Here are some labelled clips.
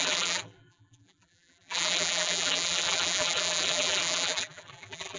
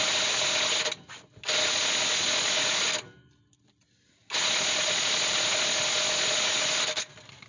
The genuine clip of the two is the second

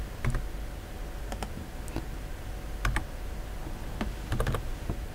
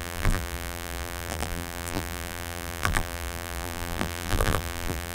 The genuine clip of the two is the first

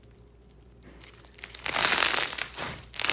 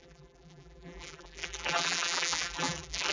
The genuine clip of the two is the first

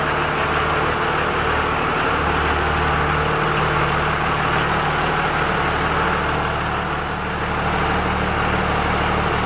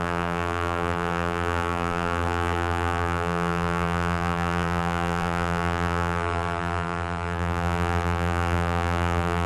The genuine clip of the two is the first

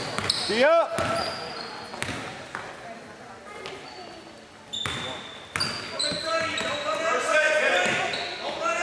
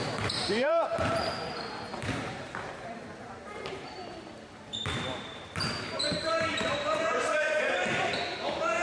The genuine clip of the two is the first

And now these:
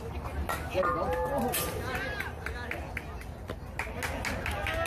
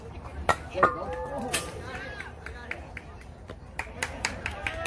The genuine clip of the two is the first